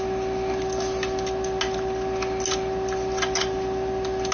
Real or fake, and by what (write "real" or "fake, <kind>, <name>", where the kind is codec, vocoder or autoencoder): real